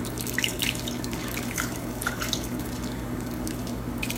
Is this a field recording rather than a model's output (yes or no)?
no